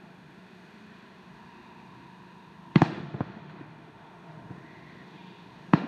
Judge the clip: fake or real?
fake